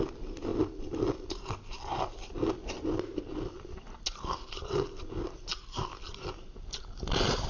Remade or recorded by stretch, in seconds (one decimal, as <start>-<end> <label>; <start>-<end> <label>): 0.0-7.5 recorded